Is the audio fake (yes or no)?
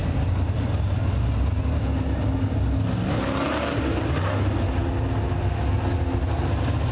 no